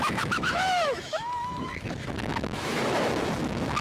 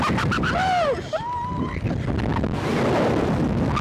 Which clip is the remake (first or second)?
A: first